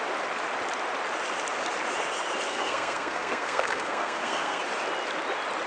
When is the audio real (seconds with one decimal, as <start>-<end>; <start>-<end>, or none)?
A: 0.0-2.5; 4.6-5.7